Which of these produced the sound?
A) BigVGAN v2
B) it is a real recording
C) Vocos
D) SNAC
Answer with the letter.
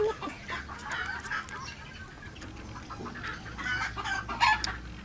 B